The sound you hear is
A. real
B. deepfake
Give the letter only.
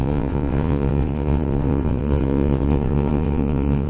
B